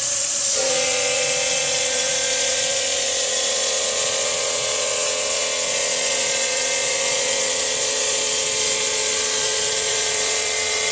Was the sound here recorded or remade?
remade